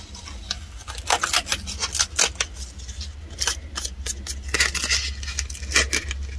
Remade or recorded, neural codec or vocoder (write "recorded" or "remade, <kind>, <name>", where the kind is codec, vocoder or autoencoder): recorded